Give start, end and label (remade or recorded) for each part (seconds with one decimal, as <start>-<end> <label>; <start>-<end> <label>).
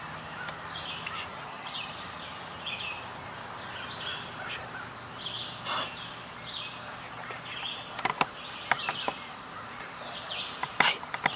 0.0-1.3 recorded; 1.3-1.9 remade; 1.9-11.4 recorded